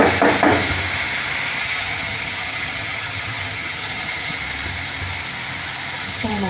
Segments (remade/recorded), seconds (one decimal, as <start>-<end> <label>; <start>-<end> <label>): 0.0-1.6 recorded; 1.6-4.4 remade; 4.4-6.0 recorded; 6.0-6.5 remade